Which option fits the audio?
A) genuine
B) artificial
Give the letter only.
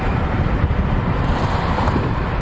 B